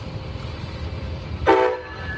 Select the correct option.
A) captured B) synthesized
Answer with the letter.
B